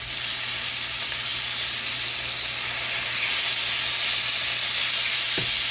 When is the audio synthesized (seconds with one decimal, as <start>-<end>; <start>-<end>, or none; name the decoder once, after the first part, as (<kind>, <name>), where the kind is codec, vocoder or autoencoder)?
none